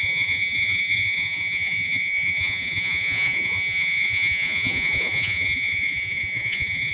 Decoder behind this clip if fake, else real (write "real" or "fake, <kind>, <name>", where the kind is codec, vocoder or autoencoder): fake, vocoder, Vocos